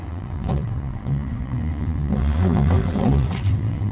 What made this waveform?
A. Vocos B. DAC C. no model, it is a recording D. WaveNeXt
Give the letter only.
D